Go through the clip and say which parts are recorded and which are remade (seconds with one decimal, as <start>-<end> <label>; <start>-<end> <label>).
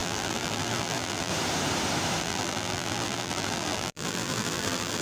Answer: 0.0-1.3 remade; 1.3-2.2 recorded; 2.2-5.0 remade